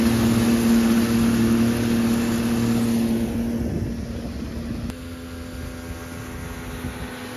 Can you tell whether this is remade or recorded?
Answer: recorded